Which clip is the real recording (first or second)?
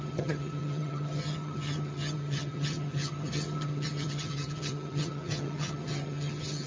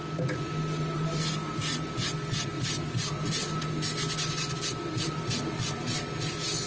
second